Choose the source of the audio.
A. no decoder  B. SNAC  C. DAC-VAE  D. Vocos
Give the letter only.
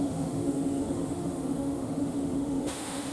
C